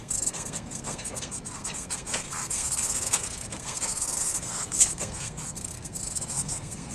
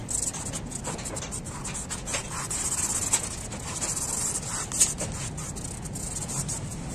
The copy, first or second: first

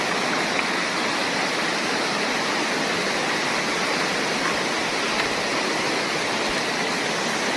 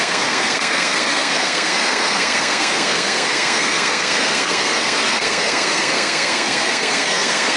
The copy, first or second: second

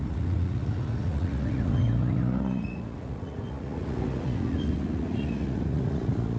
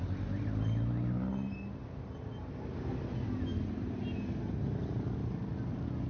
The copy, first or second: first